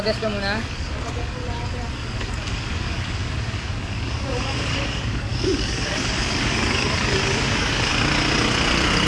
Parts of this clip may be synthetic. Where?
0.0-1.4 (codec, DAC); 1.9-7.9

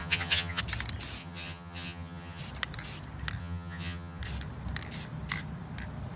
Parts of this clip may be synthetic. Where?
0.0-0.6 (vocoder, HiFi-GAN); 1.2-2.4; 3.4-4.2

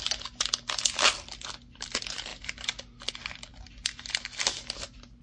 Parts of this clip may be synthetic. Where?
none

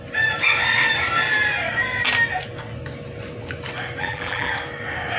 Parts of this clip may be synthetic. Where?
4.0-4.5 (vocoder, BigVGAN v2)

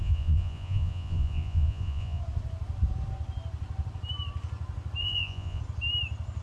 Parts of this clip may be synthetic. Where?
0.0-2.2 (vocoder, Vocos); 5.0-5.6

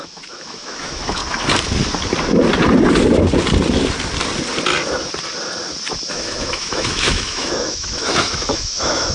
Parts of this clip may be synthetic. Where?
0.0-1.2 (autoencoder, DAC-VAE); 6.1-9.1